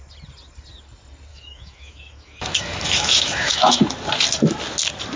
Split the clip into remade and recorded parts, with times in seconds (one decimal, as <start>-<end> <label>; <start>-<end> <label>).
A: 0.0-1.3 recorded; 1.3-3.8 remade; 3.8-5.2 recorded